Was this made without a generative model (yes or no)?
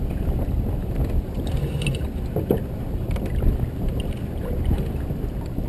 yes